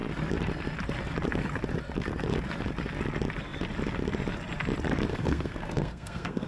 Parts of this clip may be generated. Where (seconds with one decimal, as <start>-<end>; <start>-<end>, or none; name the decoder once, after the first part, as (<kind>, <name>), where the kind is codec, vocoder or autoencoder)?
5.1-6.5 (codec, SNAC)